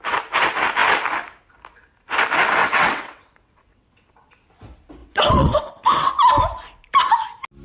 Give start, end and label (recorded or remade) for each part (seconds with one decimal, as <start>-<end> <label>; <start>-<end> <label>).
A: 0.0-2.6 recorded; 2.6-4.3 remade; 4.3-5.0 recorded; 5.0-6.2 remade; 6.2-7.6 recorded